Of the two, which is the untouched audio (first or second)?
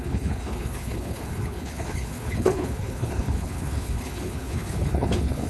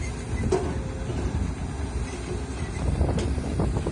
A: second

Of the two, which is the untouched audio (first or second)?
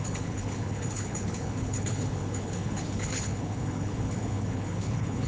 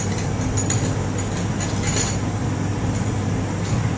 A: second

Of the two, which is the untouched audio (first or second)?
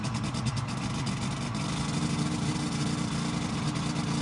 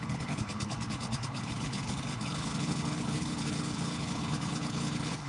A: first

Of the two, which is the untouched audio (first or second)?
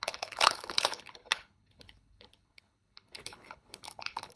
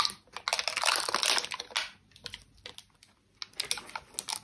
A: second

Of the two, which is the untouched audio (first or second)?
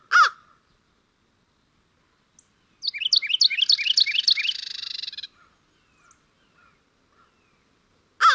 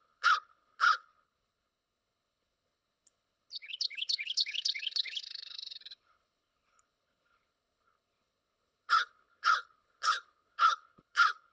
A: first